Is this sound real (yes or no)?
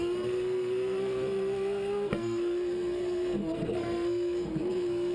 no